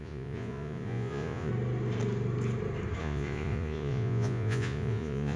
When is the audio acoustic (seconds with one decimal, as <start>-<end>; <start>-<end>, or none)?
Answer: 1.5-3.0